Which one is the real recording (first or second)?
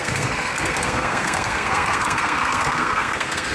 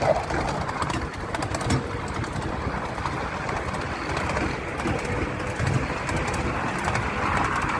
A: second